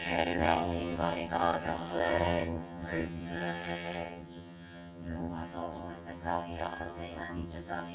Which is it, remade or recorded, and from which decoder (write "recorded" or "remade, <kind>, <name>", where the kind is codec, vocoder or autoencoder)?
remade, vocoder, HiFi-GAN